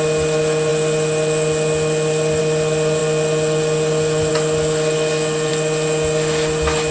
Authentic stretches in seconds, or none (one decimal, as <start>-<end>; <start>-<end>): 0.0-6.9